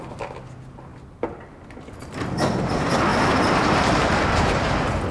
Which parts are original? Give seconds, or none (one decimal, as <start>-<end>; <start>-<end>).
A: 0.0-3.1; 4.6-5.1